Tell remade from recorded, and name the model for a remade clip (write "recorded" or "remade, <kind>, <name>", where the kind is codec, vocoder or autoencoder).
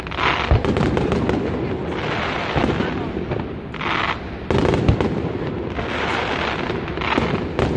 recorded